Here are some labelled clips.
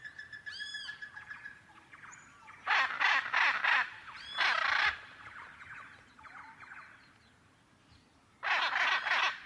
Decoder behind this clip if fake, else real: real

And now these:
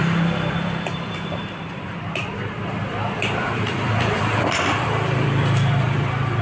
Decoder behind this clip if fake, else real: fake, vocoder, BigVGAN v2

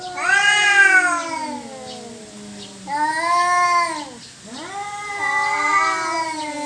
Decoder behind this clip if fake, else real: real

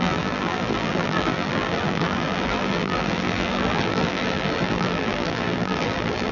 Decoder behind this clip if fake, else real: fake, vocoder, BigVGAN v2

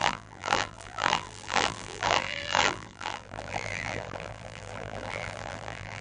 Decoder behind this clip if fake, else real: fake, vocoder, BigVGAN v2